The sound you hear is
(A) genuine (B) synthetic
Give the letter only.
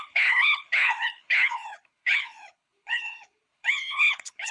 B